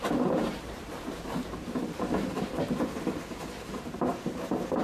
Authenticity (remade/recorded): remade